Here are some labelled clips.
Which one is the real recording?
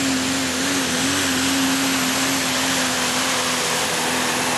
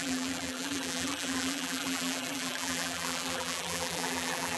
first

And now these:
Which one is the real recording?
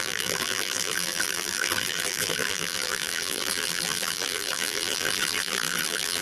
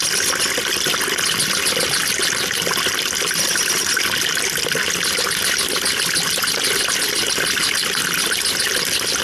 second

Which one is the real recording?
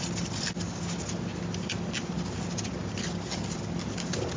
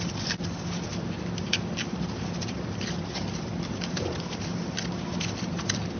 first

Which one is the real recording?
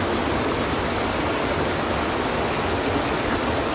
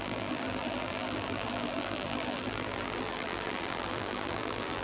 first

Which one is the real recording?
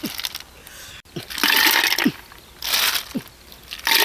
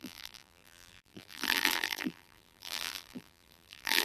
first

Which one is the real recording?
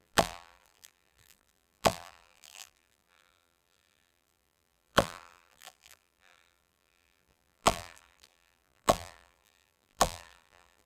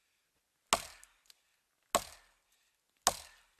second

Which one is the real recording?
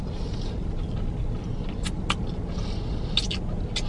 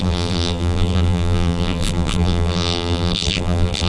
first